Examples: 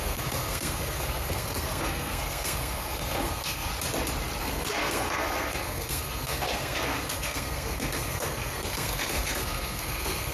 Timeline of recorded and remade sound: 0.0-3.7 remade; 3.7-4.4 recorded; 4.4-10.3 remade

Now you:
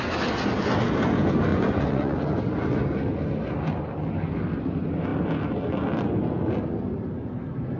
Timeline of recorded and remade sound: 0.0-1.5 recorded; 1.5-2.4 remade; 2.4-7.8 recorded

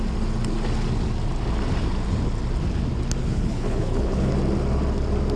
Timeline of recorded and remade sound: 0.0-3.2 recorded; 3.2-4.3 remade; 4.3-5.4 recorded

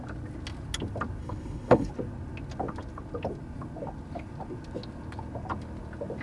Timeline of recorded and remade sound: 0.0-1.2 recorded; 1.2-1.9 remade; 1.9-6.2 recorded

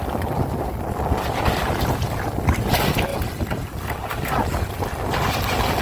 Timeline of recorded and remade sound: 0.0-5.8 recorded

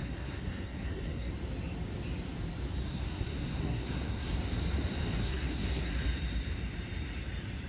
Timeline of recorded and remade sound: 0.0-1.3 remade; 1.3-2.8 recorded; 2.8-4.3 remade; 4.3-5.2 recorded; 5.2-5.9 remade; 5.9-7.7 recorded

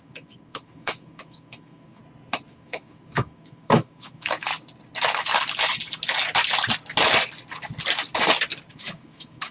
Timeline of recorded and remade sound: 0.0-2.0 remade; 2.0-2.5 recorded; 2.5-4.5 remade; 4.5-8.7 recorded; 8.7-9.5 remade